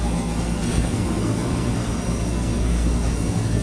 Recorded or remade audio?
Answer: remade